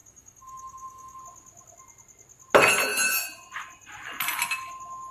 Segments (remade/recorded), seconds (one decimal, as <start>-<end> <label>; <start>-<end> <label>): 0.0-1.2 remade; 1.2-5.1 recorded